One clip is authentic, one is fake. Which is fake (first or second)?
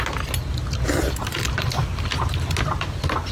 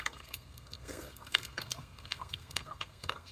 second